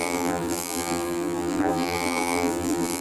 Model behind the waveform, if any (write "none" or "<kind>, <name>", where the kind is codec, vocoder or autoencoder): vocoder, BigVGAN v2